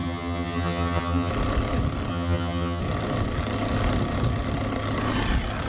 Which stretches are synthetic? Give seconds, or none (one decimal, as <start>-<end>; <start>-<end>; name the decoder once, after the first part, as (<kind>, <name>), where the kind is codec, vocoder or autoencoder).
0.0-1.3 (vocoder, HiFi-GAN); 2.1-2.8